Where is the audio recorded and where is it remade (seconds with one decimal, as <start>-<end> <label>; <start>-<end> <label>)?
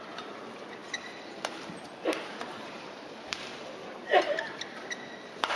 0.0-5.6 remade